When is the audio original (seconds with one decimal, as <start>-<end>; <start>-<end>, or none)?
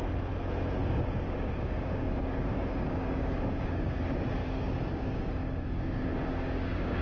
0.0-0.8; 4.0-4.4